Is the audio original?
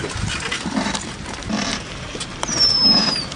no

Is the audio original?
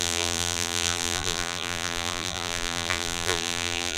no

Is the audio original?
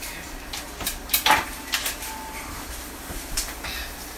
no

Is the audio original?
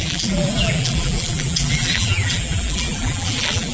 no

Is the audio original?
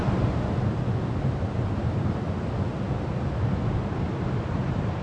yes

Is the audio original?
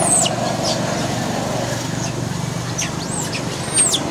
yes